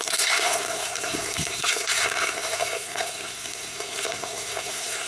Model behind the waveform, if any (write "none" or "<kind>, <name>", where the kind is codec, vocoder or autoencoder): codec, SNAC